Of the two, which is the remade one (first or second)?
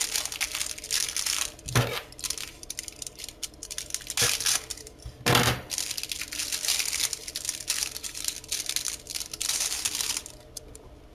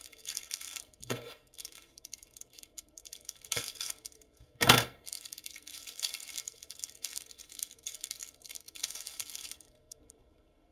second